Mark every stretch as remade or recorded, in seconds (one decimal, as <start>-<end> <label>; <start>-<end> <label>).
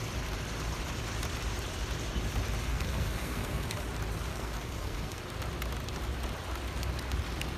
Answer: 0.0-2.7 recorded; 2.7-3.8 remade; 3.8-4.3 recorded; 4.3-5.2 remade; 5.2-7.6 recorded